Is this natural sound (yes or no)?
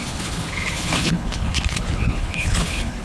no